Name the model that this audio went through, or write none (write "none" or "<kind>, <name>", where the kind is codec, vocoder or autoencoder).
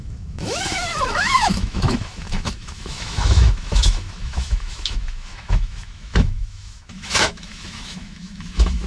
autoencoder, DAC-VAE